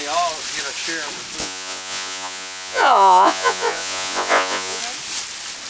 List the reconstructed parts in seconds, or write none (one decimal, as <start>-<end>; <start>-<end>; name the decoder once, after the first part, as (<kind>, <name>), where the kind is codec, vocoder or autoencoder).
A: 1.4-4.8 (vocoder, Vocos)